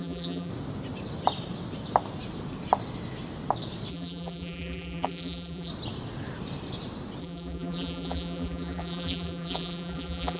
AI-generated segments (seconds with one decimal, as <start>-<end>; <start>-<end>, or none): 0.0-0.5; 3.9-5.7; 7.2-10.4